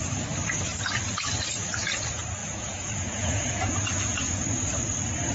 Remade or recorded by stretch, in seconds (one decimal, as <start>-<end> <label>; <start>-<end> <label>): 0.0-2.4 recorded; 2.4-4.8 remade; 4.8-5.3 recorded